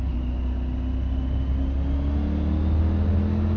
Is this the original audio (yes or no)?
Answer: yes